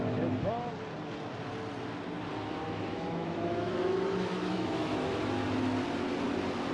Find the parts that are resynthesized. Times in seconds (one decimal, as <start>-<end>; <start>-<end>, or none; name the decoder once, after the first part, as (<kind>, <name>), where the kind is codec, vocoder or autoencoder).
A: 2.9-5.2 (autoencoder, DAC-VAE)